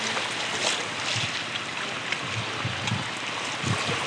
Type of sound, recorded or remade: recorded